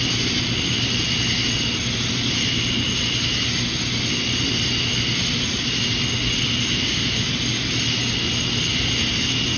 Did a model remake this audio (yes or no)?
no